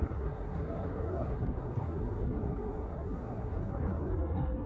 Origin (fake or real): fake